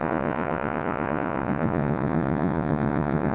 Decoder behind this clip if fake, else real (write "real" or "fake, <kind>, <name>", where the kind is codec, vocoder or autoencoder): fake, vocoder, Vocos